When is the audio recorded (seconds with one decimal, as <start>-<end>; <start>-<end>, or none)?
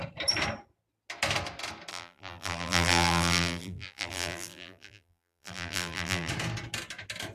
0.0-1.9; 6.3-7.3